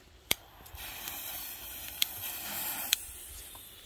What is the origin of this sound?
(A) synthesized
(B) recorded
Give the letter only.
A